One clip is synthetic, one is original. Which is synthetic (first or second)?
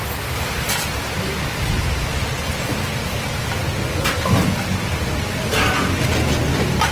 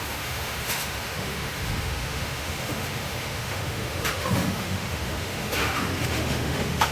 second